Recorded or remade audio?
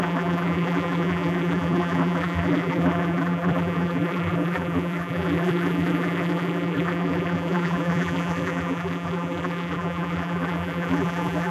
remade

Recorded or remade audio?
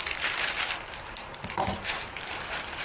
remade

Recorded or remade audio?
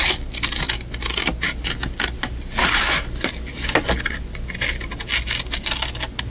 recorded